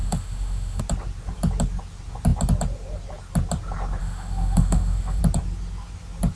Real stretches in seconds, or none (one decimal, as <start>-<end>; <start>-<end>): 0.8-4.0; 5.2-6.4

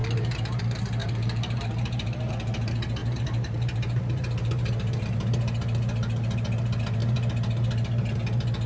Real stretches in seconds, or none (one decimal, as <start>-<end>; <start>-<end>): 0.6-1.0; 2.3-3.0; 5.0-8.7

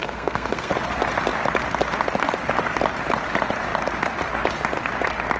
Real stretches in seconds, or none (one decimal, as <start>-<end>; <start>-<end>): 0.7-5.4

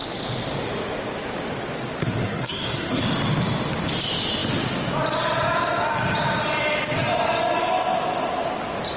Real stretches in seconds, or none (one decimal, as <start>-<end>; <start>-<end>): 0.0-2.0; 3.0-9.0

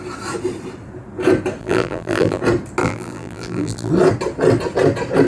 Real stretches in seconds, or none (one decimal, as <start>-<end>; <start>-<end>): 0.0-1.6; 2.4-2.8; 3.9-5.3

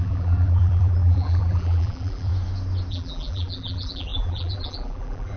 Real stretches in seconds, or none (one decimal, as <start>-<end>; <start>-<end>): 2.3-2.9

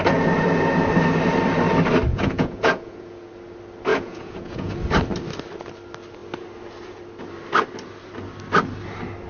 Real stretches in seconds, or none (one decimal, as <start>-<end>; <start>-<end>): 0.0-2.1; 3.3-3.9; 4.7-9.3